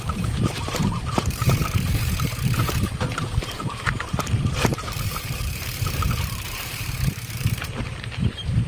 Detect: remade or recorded remade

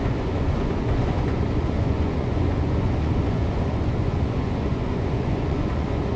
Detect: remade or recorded remade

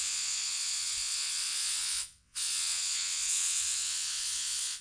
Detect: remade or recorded remade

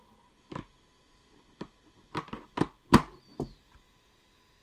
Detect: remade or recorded recorded